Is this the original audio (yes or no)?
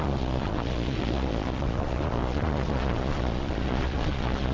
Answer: no